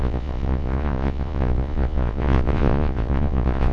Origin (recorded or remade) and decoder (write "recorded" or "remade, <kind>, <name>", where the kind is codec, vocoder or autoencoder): remade, vocoder, Vocos